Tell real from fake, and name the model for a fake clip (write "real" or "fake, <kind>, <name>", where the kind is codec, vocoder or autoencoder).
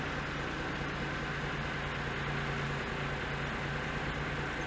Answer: real